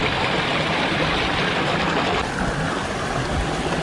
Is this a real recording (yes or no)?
yes